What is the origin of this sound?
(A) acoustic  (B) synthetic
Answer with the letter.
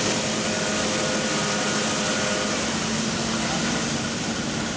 A